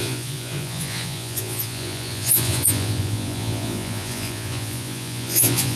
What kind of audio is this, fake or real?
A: fake